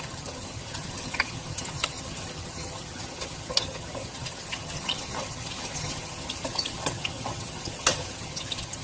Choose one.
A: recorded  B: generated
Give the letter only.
B